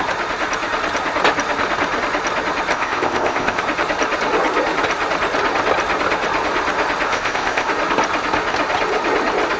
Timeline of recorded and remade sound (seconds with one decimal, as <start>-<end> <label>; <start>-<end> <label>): 0.0-2.7 recorded; 2.7-3.6 remade; 3.6-7.1 recorded; 7.1-7.7 remade; 7.7-9.6 recorded